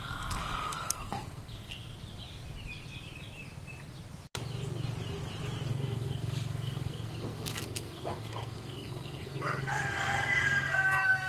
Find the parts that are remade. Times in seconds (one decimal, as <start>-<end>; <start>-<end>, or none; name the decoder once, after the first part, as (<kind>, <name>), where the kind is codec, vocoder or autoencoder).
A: 0.0-1.9 (codec, SNAC); 5.7-11.3